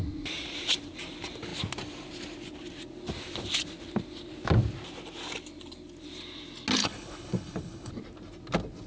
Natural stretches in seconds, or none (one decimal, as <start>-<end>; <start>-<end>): 0.0-6.8; 7.9-8.9